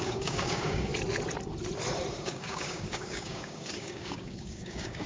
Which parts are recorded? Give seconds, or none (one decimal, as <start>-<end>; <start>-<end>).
0.9-2.1